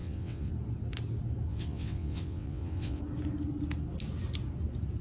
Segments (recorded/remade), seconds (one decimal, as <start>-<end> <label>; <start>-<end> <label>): 0.0-0.5 remade; 0.5-1.5 recorded; 1.5-3.0 remade; 3.0-5.0 recorded